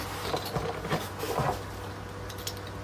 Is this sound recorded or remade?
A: recorded